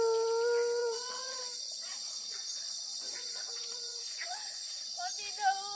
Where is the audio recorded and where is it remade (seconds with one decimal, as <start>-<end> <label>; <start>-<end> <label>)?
0.0-0.8 recorded; 0.8-1.4 remade; 1.4-2.4 recorded; 2.4-4.7 remade; 4.7-5.8 recorded